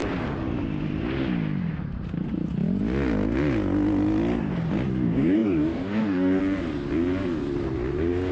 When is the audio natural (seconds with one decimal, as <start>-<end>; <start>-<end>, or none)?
0.0-4.9; 6.4-8.3